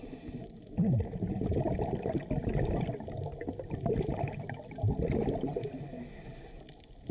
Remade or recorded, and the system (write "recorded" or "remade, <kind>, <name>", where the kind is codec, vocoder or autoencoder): recorded